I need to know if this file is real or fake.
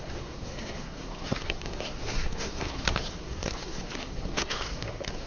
fake